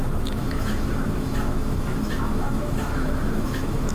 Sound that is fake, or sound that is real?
fake